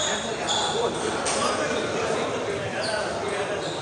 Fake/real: real